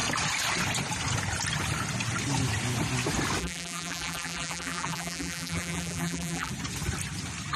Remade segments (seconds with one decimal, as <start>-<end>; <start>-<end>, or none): 3.4-6.5